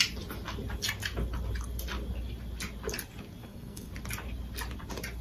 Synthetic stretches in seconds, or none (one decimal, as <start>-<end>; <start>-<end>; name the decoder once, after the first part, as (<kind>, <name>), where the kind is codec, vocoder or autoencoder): 3.4-3.9 (codec, SNAC)